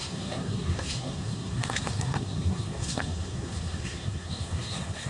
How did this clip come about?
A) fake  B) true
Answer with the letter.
A